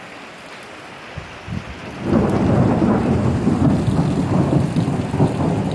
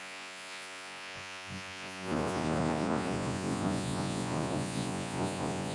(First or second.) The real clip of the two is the first